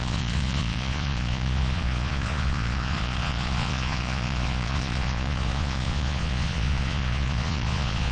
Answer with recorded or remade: remade